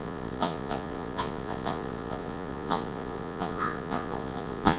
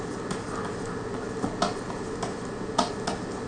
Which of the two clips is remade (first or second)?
first